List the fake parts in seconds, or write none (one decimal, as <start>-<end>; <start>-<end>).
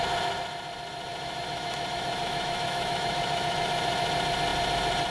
1.1-3.7